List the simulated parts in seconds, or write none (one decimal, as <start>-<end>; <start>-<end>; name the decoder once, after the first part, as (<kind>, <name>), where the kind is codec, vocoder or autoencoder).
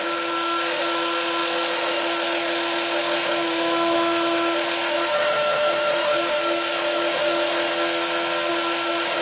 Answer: 0.0-7.7 (autoencoder, DAC-VAE); 8.5-9.2